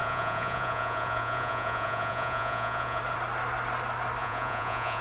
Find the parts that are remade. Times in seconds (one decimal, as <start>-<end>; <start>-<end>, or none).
0.0-3.0; 4.2-5.0